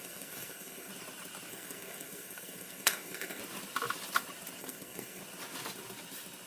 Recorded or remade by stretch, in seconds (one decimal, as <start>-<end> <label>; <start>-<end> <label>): 0.0-0.9 remade; 0.9-1.5 recorded; 1.5-3.4 remade; 3.4-4.6 recorded; 4.6-5.2 remade; 5.2-6.5 recorded